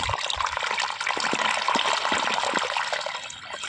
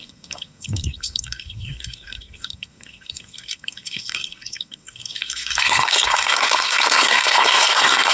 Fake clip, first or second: second